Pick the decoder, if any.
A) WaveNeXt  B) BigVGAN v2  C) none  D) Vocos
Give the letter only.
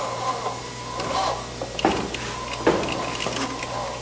C